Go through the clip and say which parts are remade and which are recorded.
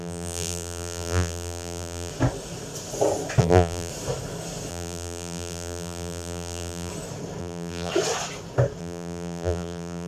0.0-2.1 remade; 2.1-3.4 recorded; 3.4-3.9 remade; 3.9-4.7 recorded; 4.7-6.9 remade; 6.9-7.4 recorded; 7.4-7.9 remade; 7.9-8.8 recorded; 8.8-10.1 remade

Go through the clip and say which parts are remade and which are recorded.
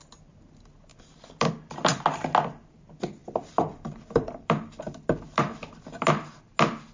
0.0-0.9 recorded; 0.9-1.5 remade; 1.5-3.2 recorded; 3.2-6.1 remade; 6.1-6.9 recorded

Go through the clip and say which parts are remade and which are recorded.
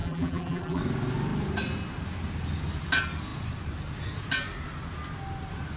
0.0-0.8 remade; 0.8-5.8 recorded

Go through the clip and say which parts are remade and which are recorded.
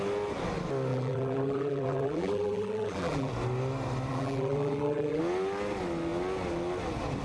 0.0-0.9 recorded; 0.9-3.3 remade; 3.3-4.1 recorded; 4.1-5.2 remade; 5.2-7.2 recorded